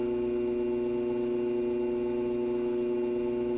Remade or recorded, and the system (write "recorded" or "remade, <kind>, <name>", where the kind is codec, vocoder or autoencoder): recorded